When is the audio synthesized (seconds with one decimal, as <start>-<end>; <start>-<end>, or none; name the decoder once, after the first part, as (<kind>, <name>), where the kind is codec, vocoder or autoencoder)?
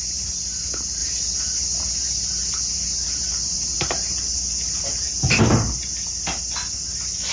none